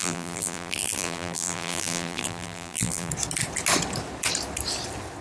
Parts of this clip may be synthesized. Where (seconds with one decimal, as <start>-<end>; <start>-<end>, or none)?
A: 0.0-3.1